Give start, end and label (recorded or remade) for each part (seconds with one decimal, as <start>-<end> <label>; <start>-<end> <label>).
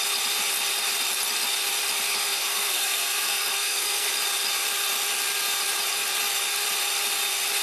0.0-2.1 recorded; 2.1-4.1 remade; 4.1-7.6 recorded